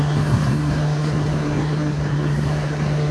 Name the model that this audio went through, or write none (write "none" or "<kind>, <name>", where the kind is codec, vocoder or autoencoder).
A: codec, SNAC